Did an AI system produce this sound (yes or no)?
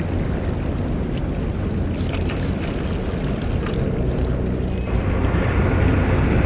no